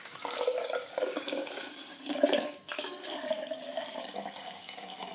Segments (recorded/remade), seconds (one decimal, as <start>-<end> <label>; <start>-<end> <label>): 0.0-5.1 remade